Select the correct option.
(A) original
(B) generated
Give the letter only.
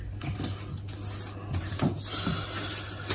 A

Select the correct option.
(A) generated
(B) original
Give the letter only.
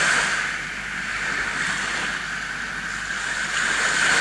B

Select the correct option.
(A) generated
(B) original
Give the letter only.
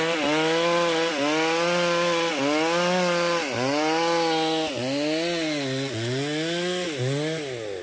B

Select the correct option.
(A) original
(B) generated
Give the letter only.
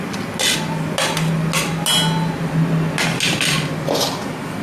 A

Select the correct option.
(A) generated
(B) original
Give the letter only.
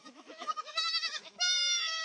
A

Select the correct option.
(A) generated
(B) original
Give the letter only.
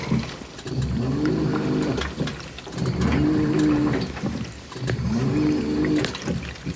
B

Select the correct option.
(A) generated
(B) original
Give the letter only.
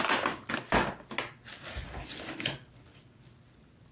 B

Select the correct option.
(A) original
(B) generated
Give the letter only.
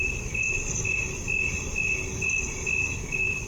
A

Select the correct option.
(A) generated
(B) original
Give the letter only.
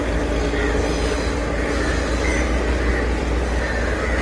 B